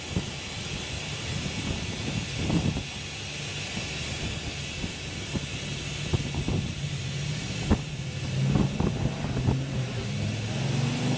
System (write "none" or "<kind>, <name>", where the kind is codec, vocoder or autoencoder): none